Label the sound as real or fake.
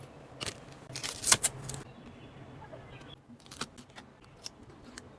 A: real